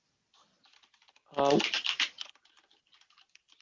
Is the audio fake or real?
real